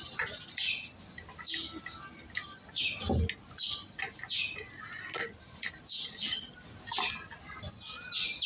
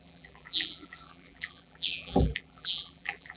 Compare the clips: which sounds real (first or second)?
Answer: first